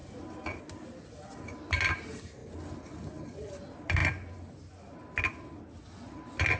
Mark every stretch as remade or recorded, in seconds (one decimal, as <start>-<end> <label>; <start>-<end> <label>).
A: 0.0-6.6 recorded